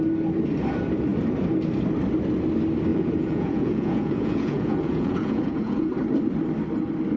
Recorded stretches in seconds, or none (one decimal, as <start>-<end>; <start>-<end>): 0.0-2.9; 5.9-7.2